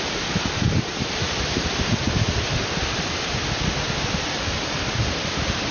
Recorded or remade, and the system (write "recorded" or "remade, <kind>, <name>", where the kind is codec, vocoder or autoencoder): remade, vocoder, BigVGAN v2